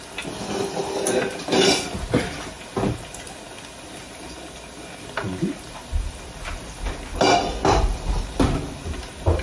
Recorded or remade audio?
recorded